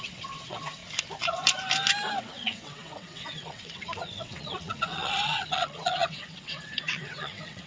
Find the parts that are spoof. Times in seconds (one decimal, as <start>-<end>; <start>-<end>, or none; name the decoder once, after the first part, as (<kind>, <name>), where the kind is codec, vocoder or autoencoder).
0.0-0.8 (vocoder, WaveNeXt); 2.2-7.7